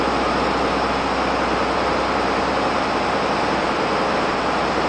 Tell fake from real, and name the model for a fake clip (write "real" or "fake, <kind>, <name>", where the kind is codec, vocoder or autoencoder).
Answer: real